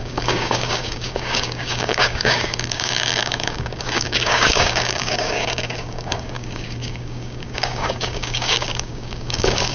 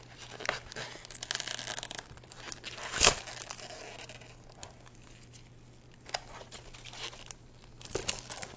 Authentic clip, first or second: second